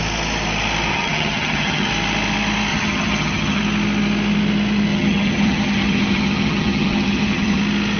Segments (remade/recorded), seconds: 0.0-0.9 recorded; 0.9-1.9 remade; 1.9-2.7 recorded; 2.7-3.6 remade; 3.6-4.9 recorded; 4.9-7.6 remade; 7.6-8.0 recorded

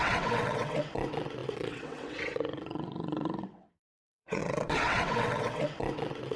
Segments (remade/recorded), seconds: 0.0-6.4 remade

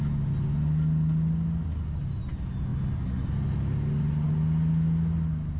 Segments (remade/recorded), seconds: 0.0-5.6 recorded

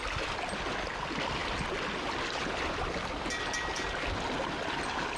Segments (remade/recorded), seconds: 0.0-5.2 recorded

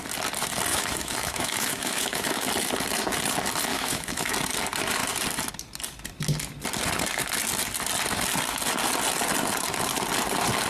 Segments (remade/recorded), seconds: 0.0-0.7 recorded; 0.7-2.5 remade; 2.5-3.7 recorded; 3.7-4.3 remade; 4.3-10.7 recorded

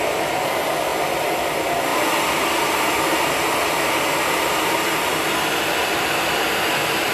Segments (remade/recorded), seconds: 0.0-0.9 recorded; 0.9-1.5 remade; 1.5-7.1 recorded